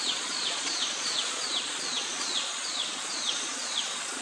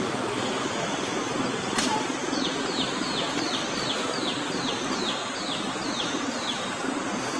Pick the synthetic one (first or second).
first